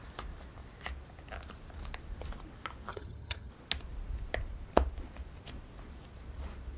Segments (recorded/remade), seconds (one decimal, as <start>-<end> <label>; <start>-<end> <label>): 0.0-2.9 recorded; 2.9-3.5 remade; 3.5-6.8 recorded